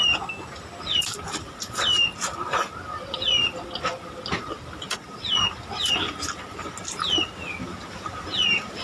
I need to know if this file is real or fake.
real